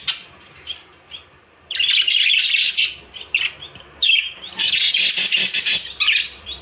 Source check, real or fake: fake